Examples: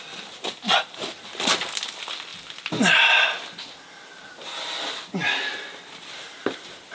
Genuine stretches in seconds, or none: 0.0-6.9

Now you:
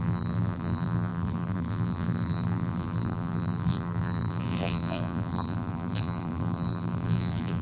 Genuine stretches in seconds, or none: none

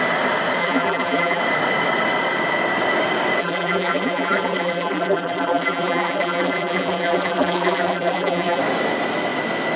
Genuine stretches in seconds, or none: 0.0-0.6; 1.4-3.4; 8.6-9.8

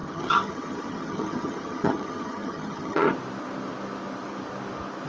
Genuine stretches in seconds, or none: 3.1-5.1